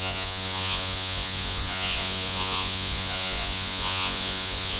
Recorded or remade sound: remade